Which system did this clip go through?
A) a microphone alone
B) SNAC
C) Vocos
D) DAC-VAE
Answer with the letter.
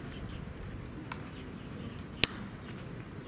A